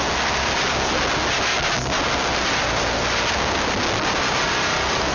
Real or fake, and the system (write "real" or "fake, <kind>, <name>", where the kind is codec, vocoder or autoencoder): real